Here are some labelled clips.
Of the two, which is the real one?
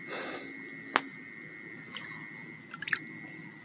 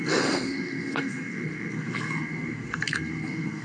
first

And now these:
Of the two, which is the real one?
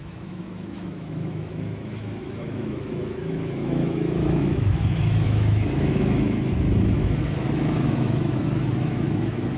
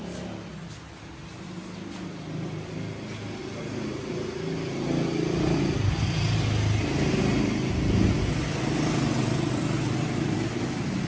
second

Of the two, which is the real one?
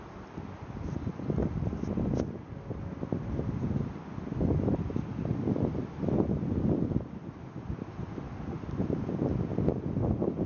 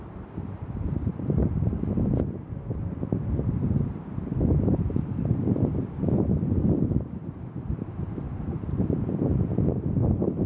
first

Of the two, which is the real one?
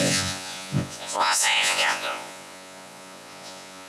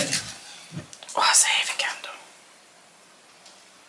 second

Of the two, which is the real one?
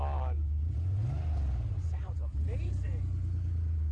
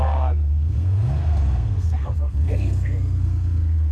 first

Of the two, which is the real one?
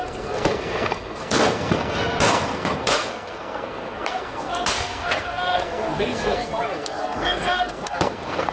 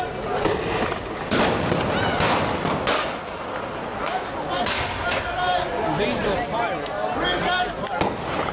second